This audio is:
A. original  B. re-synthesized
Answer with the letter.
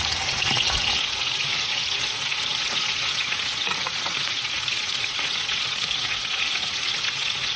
B